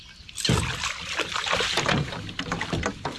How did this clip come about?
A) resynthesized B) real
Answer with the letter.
B